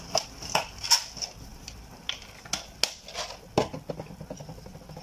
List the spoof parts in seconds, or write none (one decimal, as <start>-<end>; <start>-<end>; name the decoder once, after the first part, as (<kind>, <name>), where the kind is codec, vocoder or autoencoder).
none